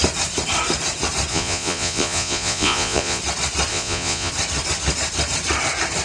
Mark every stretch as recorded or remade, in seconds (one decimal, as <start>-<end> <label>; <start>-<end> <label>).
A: 0.0-1.3 recorded; 1.3-3.2 remade; 3.2-3.7 recorded; 3.7-4.3 remade; 4.3-6.0 recorded